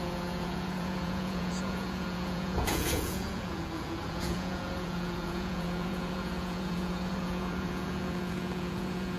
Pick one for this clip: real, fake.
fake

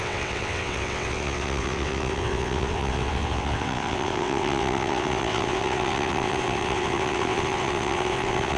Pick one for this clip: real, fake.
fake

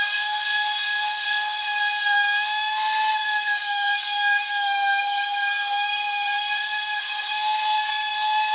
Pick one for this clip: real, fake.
fake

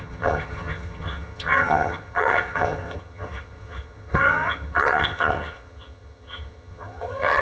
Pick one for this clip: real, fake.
fake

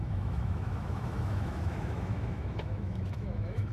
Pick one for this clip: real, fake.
fake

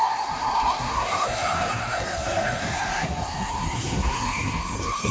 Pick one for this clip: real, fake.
fake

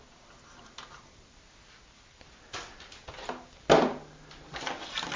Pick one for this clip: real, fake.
real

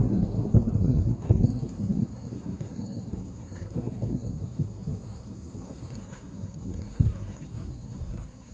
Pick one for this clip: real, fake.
fake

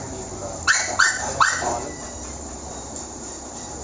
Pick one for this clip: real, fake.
fake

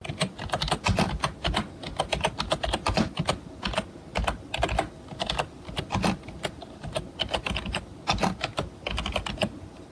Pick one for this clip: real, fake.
real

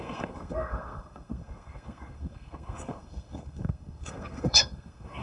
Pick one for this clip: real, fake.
fake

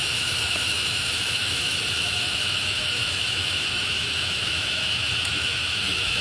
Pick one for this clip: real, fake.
fake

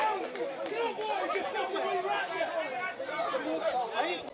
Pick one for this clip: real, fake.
real